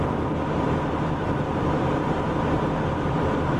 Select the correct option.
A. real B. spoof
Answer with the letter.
B